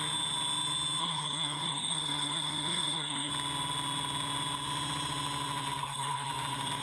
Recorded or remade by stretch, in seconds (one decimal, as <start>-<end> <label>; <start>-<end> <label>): 0.0-1.0 recorded; 1.0-3.3 remade; 3.3-5.8 recorded; 5.8-6.3 remade; 6.3-6.8 recorded